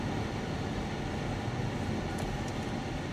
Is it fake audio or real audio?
real